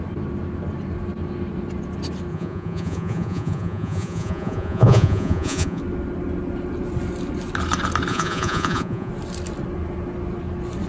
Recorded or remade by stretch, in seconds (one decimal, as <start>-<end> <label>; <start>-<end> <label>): 0.0-2.3 recorded; 2.3-5.8 remade; 5.8-8.1 recorded; 8.1-9.1 remade; 9.1-10.9 recorded